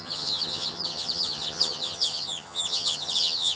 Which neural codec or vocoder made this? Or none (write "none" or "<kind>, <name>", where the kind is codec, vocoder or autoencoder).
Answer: vocoder, HiFi-GAN